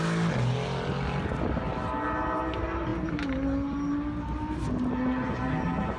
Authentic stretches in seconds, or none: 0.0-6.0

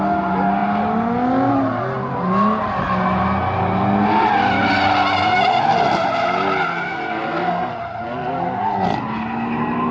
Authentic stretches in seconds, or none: 0.0-6.7; 7.7-9.9

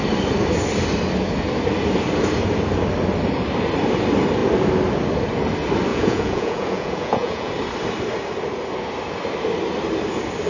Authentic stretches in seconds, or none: 0.0-5.9; 7.5-10.5